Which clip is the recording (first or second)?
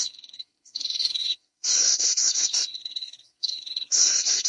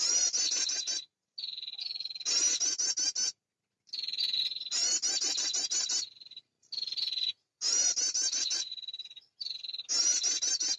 second